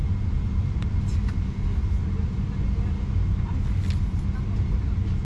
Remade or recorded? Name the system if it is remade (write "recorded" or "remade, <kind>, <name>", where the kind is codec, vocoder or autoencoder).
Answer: recorded